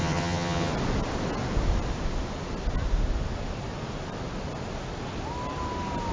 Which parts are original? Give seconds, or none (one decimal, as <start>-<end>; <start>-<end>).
0.7-6.1